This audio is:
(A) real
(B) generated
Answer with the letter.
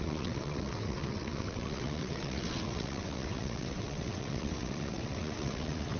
B